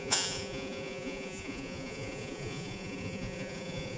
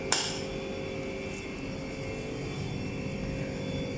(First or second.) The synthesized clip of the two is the first